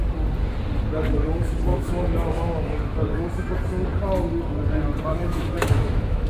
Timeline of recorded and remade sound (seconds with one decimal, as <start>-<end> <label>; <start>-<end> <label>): 0.0-1.7 recorded; 1.7-2.7 remade; 2.7-5.1 recorded; 5.1-6.3 remade